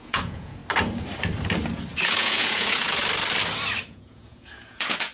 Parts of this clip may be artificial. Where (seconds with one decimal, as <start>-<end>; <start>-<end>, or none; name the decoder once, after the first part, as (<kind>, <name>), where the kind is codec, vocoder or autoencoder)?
0.0-0.6 (vocoder, Vocos); 1.9-3.0; 3.8-5.1